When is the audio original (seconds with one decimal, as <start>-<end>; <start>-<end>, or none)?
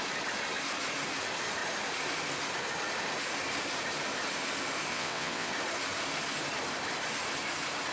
0.0-4.9; 5.5-7.9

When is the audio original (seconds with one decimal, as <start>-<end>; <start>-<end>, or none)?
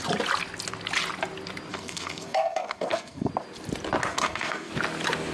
0.0-1.7; 3.3-4.1; 4.7-5.3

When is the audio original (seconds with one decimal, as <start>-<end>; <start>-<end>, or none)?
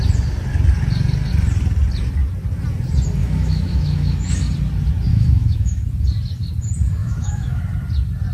0.0-3.2; 4.4-5.1; 5.8-7.0; 7.6-8.3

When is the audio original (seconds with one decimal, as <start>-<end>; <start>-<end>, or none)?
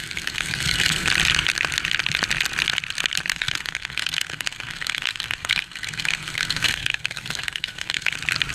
1.1-3.3; 8.1-8.5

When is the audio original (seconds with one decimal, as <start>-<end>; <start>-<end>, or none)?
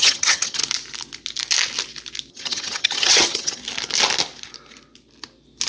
0.6-2.3; 3.6-5.7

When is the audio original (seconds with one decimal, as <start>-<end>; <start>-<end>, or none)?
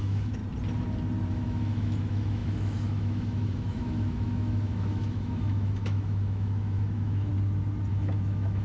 0.4-1.3; 7.3-7.9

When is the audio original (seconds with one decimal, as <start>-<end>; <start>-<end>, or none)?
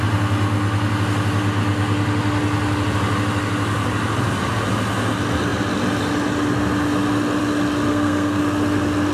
0.0-7.9; 8.4-9.1